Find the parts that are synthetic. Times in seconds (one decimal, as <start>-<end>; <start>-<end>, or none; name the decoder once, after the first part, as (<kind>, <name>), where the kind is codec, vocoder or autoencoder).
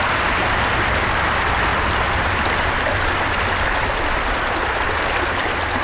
1.7-5.2 (vocoder, BigVGAN v2)